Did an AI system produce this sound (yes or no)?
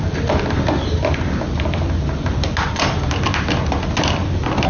no